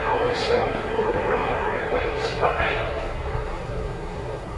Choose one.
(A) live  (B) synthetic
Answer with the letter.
B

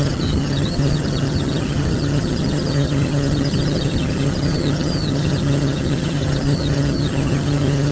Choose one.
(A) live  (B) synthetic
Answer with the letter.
B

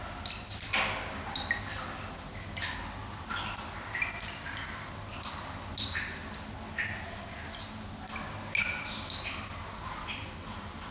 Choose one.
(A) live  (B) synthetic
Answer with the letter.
A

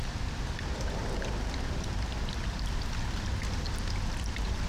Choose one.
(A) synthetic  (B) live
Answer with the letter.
B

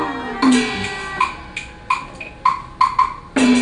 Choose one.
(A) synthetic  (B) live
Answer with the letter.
B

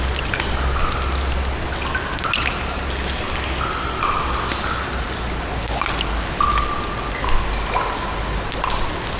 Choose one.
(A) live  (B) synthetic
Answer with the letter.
A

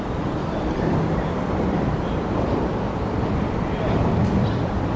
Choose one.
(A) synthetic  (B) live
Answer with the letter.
A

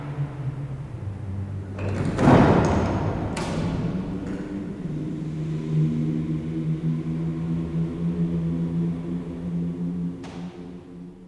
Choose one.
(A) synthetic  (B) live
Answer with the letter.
B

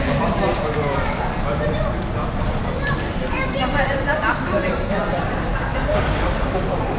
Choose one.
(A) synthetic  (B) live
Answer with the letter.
A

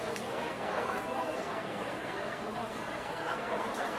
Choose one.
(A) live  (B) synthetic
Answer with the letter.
B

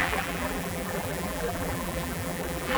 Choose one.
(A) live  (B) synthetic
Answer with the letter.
B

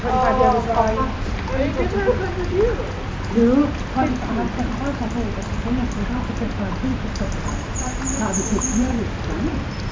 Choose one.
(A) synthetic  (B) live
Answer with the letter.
B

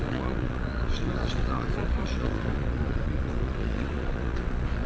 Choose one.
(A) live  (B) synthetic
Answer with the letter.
B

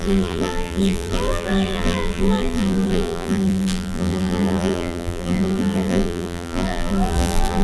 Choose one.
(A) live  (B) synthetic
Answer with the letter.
B